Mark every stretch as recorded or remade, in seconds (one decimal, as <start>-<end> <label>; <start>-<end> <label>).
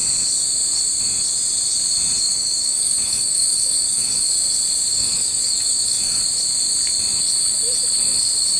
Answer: 0.0-2.2 recorded; 2.2-4.3 remade; 4.3-4.9 recorded; 4.9-6.2 remade; 6.2-8.6 recorded